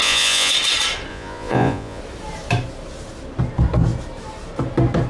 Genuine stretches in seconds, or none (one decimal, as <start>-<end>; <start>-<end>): 0.5-1.1; 2.0-5.1

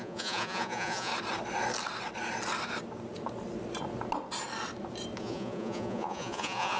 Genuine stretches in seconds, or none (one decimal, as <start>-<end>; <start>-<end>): 1.1-5.2

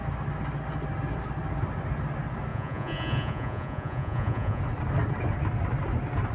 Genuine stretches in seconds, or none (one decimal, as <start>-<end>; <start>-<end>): 0.0-2.5; 4.6-6.3

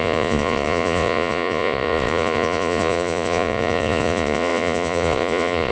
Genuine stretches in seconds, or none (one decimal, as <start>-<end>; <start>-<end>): none

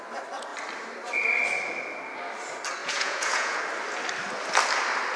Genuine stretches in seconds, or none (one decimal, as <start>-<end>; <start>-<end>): 0.0-2.8; 3.6-5.2

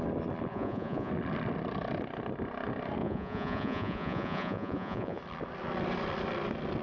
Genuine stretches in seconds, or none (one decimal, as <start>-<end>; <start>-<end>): 0.0-0.5; 1.1-3.0; 5.2-6.8